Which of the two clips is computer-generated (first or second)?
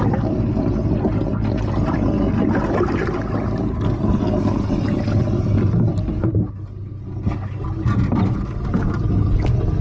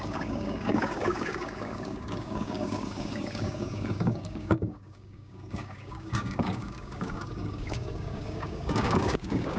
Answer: second